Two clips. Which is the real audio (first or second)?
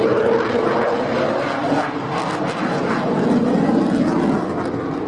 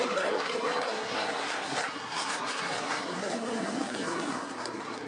first